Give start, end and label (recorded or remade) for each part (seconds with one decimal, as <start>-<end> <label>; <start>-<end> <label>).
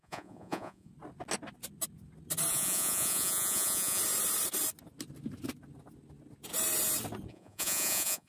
0.0-0.9 remade; 0.9-2.5 recorded; 2.5-4.0 remade; 4.0-7.3 recorded; 7.3-8.3 remade